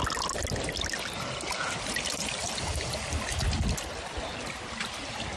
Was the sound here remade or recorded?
recorded